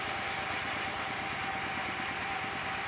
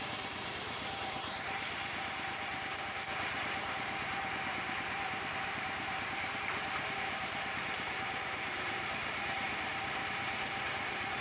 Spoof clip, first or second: second